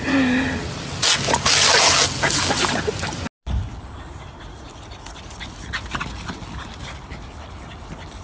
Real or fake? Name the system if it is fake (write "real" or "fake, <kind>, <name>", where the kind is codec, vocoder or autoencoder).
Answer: real